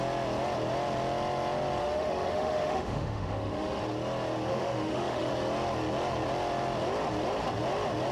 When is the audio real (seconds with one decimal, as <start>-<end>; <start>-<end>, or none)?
0.0-1.8; 3.8-4.5; 5.3-8.1